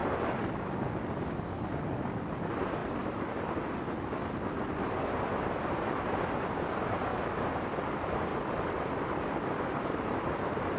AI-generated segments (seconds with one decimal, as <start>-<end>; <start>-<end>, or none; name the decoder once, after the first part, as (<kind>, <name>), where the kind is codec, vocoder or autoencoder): 2.4-2.8 (vocoder, BigVGAN v2); 4.3-7.1; 7.9-8.3; 9.0-10.8